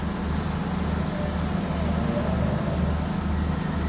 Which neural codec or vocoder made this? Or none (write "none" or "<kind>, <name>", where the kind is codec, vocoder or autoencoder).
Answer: none